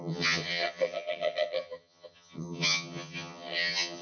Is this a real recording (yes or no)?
no